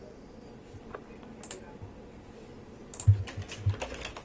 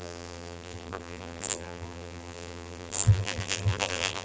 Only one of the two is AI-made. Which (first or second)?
second